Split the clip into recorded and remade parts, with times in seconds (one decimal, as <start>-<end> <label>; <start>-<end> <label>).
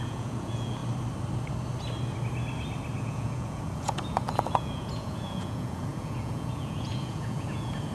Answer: 0.0-0.8 remade; 0.8-3.0 recorded; 3.0-7.9 remade